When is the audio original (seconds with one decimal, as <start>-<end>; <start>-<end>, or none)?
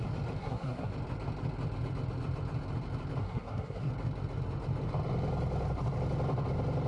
0.0-0.4; 0.9-3.2; 3.9-6.9